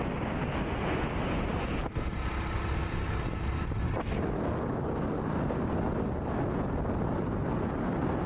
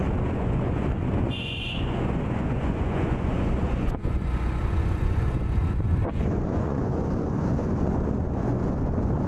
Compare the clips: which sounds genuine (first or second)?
first